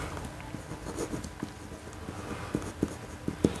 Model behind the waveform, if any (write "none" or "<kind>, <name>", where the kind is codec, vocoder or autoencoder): none